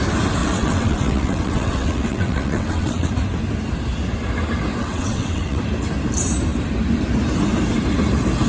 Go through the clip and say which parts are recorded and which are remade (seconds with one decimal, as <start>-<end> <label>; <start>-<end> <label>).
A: 0.0-0.4 recorded; 0.4-3.1 remade; 3.1-4.8 recorded; 4.8-5.6 remade; 5.6-8.5 recorded